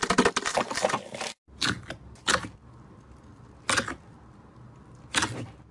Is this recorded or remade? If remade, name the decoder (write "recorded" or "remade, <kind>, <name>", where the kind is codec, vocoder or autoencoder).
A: recorded